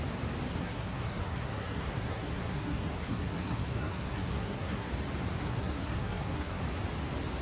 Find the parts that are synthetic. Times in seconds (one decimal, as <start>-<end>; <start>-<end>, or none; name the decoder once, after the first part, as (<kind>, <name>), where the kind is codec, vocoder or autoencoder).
0.5-4.9 (codec, SNAC); 5.4-6.6